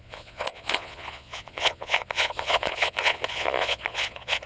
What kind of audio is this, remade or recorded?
remade